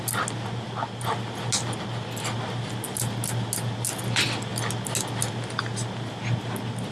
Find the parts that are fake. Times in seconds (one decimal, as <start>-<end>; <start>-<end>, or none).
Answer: none